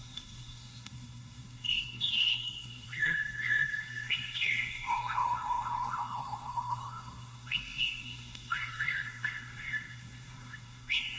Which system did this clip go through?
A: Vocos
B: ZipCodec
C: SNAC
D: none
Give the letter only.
C